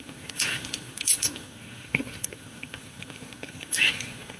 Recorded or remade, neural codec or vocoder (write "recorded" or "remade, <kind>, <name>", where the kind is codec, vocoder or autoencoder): remade, codec, SNAC